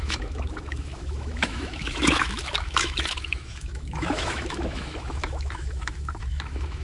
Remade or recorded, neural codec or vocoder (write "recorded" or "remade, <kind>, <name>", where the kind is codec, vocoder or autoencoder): remade, autoencoder, DAC-VAE